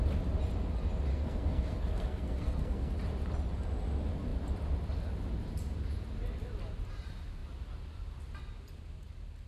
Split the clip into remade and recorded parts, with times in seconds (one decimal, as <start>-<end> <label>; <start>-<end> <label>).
0.0-1.1 recorded; 1.1-3.0 remade; 3.0-9.5 recorded